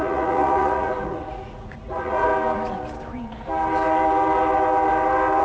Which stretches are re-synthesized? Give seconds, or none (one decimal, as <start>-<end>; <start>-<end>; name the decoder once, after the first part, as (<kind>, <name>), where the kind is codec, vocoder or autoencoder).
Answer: 0.0-2.3 (vocoder, Vocos)